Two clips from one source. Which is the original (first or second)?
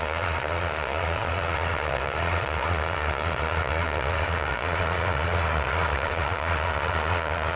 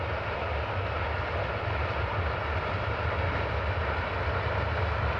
second